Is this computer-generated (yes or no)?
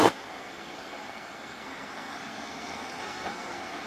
yes